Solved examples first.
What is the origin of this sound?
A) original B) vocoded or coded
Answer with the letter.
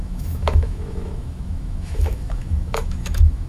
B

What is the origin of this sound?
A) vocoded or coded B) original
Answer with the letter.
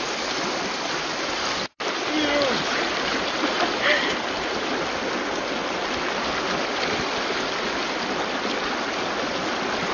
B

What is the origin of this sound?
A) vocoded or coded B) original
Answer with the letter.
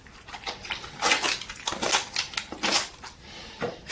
B